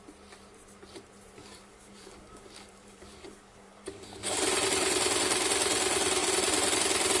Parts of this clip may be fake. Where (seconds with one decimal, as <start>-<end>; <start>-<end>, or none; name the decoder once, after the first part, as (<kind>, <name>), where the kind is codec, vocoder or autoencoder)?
1.4-4.4 (codec, DAC)